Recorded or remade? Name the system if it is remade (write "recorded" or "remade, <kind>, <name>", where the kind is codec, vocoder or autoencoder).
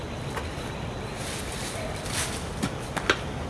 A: recorded